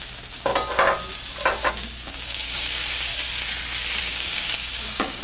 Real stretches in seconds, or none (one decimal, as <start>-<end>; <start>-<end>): 0.5-1.7; 3.1-4.0